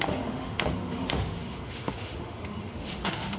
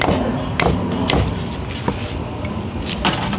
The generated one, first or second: first